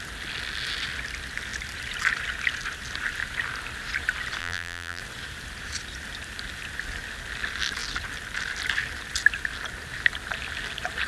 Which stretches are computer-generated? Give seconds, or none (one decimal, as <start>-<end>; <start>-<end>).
4.4-5.0